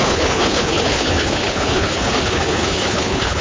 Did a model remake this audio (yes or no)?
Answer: yes